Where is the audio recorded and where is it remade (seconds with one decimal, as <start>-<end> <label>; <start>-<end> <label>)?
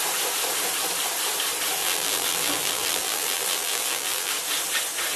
0.0-1.8 recorded; 1.8-4.3 remade; 4.3-5.2 recorded